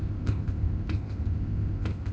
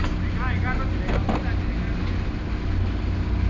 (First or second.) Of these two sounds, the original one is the second